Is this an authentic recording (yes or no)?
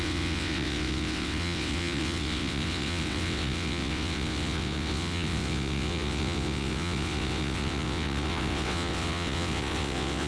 no